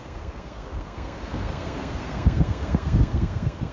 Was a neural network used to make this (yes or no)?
yes